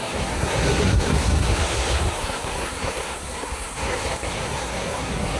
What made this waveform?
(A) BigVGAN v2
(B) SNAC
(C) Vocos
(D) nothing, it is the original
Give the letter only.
B